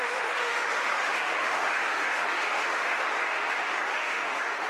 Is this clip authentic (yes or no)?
no